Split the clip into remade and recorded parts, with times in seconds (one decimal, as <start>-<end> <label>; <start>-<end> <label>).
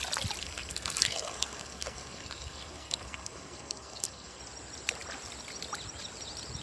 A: 0.0-0.4 recorded; 0.4-4.4 remade; 4.4-6.6 recorded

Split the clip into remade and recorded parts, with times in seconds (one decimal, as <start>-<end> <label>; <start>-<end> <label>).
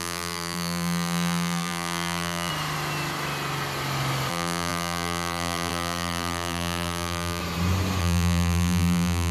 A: 0.0-2.5 remade; 2.5-4.3 recorded; 4.3-7.4 remade; 7.4-8.0 recorded; 8.0-9.3 remade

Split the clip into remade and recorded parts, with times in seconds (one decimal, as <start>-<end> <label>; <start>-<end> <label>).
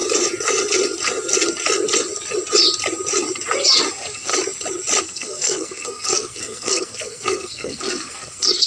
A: 0.0-3.9 recorded; 3.9-4.3 remade; 4.3-5.0 recorded; 5.0-8.7 remade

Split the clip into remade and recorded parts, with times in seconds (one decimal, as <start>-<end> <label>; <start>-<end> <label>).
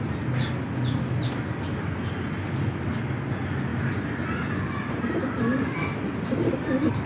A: 0.0-7.1 recorded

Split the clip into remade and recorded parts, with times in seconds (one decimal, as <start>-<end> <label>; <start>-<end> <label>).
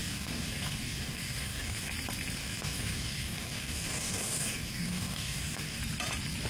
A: 0.0-1.9 remade; 1.9-2.4 recorded; 2.4-5.8 remade; 5.8-6.5 recorded